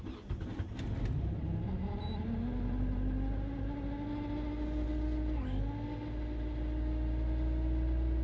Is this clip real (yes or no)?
yes